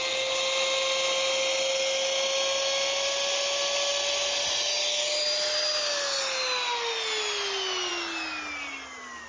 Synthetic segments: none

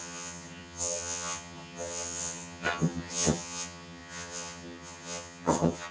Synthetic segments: 0.0-5.9

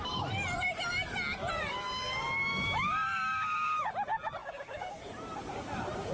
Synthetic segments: 1.5-3.9; 4.4-5.0

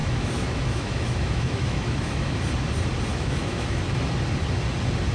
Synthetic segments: 0.0-2.4; 3.1-3.8

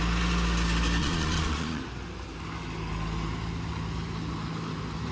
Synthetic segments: 1.0-1.8

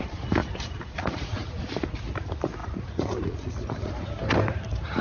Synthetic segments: 0.4-1.6; 2.6-3.9

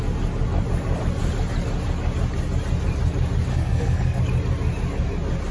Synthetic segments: 3.5-4.2